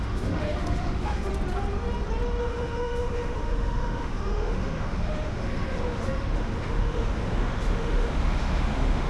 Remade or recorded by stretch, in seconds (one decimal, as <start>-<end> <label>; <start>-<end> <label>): 0.0-1.3 remade; 1.3-2.4 recorded; 2.4-9.1 remade